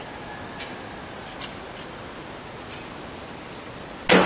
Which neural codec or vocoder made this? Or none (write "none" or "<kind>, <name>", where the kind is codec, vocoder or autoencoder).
none